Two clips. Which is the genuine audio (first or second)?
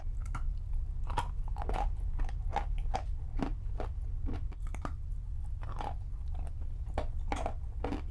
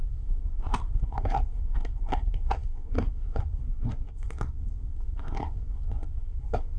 first